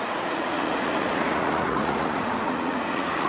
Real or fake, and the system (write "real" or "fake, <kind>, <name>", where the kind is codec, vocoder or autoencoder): fake, vocoder, Vocos